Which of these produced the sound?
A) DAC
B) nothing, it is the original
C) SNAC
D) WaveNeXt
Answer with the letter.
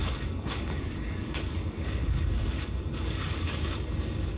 A